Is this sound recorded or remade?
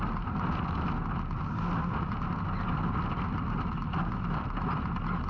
recorded